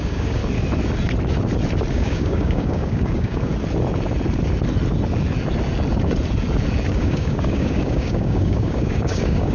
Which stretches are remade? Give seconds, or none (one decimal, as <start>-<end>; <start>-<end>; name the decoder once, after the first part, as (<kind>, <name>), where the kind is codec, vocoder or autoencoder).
0.0-0.4 (codec, DAC); 1.9-3.5; 6.9-9.5